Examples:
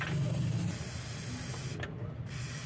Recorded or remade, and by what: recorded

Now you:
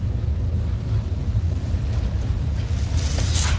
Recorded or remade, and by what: recorded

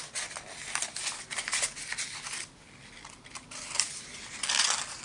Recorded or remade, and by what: recorded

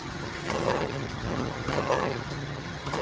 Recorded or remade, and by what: remade, vocoder, HiFi-GAN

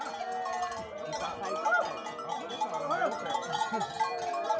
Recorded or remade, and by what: recorded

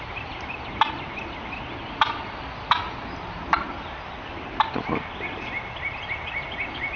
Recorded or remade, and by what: recorded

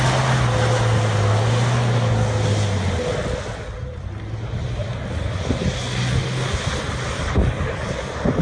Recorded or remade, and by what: recorded